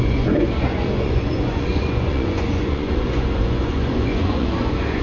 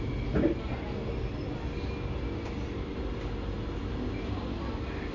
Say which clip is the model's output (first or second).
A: first